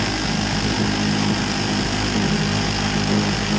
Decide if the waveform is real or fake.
real